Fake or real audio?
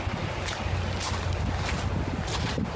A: real